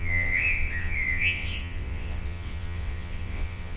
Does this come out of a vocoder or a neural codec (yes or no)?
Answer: yes